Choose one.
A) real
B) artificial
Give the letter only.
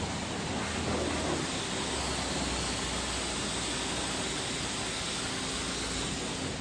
A